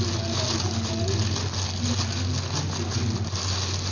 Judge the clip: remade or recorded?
recorded